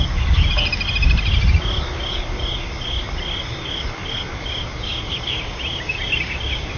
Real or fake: real